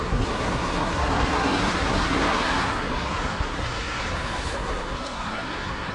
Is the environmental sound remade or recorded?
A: remade